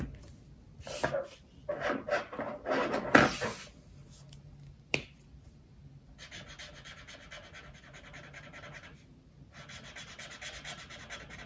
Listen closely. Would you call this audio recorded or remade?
recorded